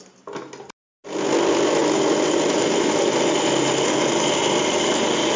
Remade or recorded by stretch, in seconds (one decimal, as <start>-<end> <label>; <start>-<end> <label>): 0.0-5.4 recorded